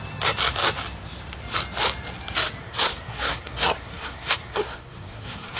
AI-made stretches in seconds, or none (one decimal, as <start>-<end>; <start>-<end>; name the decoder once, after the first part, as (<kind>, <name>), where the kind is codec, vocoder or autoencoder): 2.6-5.6 (codec, SNAC)